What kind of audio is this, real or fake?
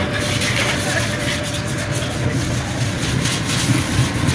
real